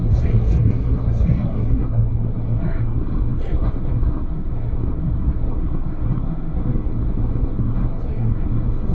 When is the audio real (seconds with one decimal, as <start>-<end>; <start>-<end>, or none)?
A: none